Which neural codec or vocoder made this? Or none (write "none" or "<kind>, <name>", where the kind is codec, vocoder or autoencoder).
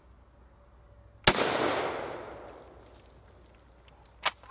none